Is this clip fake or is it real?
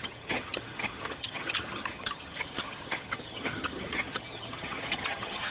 fake